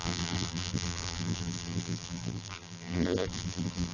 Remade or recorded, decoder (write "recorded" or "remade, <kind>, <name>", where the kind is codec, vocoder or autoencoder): remade, vocoder, BigVGAN v2